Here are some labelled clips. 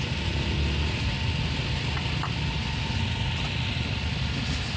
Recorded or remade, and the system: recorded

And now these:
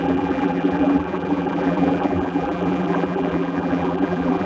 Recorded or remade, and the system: remade, vocoder, BigVGAN v2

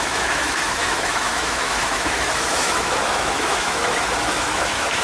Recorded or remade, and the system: remade, autoencoder, DAC-VAE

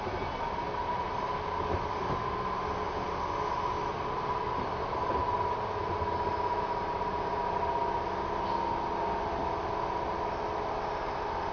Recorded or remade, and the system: recorded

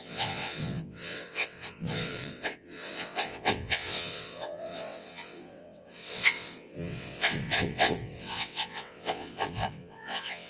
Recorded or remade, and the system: remade, vocoder, WaveNeXt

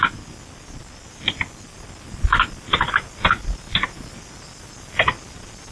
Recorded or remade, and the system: recorded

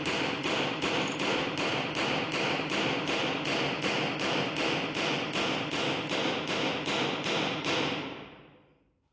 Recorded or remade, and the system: remade, vocoder, BigVGAN v2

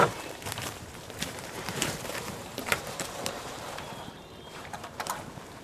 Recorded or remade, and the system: remade, vocoder, BigVGAN v2